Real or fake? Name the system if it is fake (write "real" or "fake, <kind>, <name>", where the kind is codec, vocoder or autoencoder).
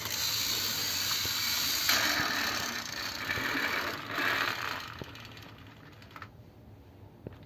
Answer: real